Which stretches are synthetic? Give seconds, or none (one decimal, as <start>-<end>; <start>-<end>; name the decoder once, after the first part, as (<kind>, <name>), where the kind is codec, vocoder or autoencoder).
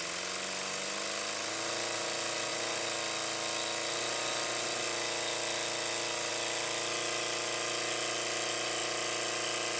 none